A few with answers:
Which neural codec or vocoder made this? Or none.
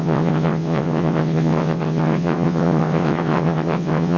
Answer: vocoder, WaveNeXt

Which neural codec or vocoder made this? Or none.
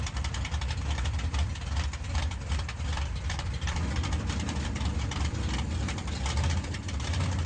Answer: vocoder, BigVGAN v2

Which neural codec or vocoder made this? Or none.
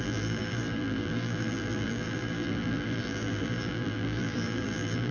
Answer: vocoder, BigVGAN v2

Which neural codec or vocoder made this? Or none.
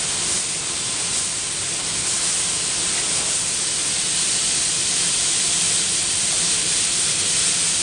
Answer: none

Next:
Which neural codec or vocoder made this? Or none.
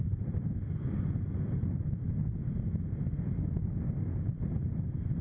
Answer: none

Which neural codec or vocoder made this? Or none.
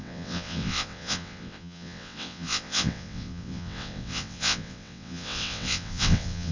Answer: vocoder, WaveNeXt